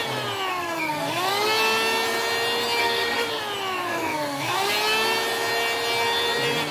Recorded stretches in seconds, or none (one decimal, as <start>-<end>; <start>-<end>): 0.0-0.5; 1.3-2.8; 3.4-3.8; 4.7-6.7